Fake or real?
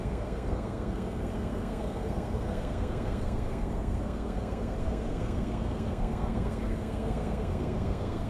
fake